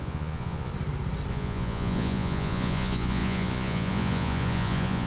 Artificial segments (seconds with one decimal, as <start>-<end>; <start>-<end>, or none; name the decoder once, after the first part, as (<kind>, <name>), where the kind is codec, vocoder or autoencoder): 0.0-0.7 (vocoder, Vocos); 1.3-5.1